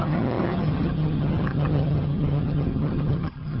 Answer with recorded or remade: remade